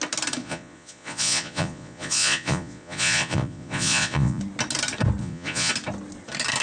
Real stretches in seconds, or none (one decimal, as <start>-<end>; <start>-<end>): 0.0-0.4; 4.4-5.2; 5.7-6.6